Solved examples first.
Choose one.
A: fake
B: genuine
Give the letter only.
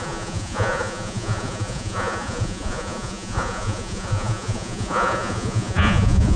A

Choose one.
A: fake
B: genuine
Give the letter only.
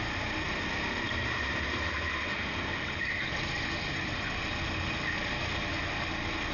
B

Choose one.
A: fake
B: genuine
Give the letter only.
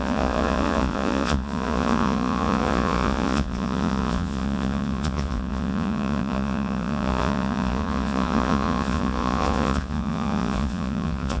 A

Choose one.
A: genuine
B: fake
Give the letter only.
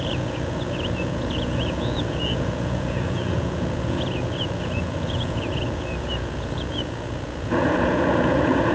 B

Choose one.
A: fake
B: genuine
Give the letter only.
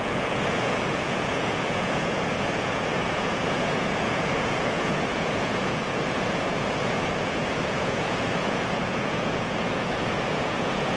A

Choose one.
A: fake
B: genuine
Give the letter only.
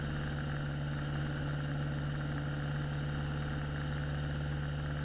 B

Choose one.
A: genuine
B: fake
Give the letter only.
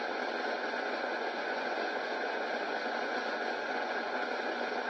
B